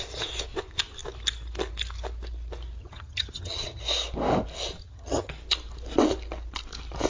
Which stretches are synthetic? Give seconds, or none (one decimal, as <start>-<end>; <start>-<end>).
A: 2.8-3.8; 4.8-5.3

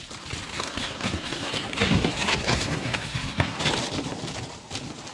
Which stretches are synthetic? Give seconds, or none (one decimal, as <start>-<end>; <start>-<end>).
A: 0.5-3.6

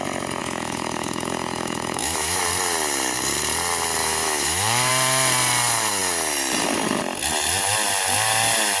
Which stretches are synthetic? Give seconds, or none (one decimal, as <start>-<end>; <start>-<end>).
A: 0.4-2.4; 4.0-4.9

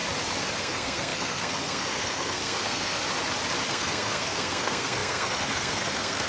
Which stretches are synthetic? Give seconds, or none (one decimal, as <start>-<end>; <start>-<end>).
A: 0.6-3.0; 3.7-6.3

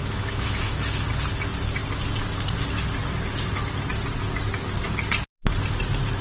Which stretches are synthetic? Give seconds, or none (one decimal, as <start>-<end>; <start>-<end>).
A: 0.0-1.1

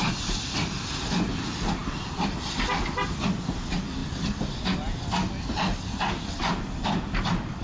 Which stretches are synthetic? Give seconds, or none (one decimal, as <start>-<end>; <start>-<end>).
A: 0.0-0.9; 4.0-4.6

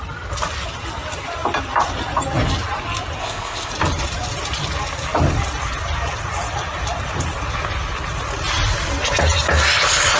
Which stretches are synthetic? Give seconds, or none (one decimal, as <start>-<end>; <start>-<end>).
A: 3.2-3.7